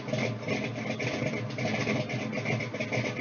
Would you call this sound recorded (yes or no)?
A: yes